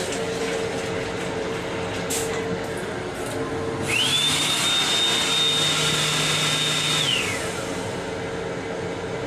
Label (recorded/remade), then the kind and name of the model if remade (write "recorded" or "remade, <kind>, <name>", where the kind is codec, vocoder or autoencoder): recorded